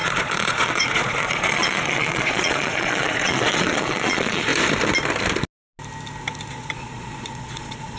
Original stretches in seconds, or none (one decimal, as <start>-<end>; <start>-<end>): 4.5-6.5